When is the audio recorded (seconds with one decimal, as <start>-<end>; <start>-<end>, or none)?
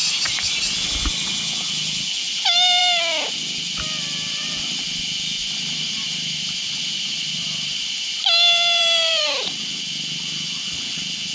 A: 0.0-5.4; 9.3-11.3